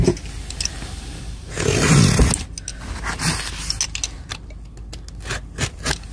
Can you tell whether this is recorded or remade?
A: recorded